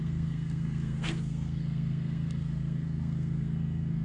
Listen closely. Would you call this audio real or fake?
fake